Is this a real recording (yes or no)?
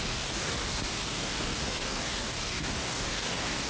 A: no